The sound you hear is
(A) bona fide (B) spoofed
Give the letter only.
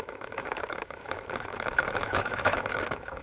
B